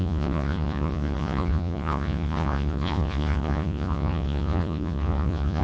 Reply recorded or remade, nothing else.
remade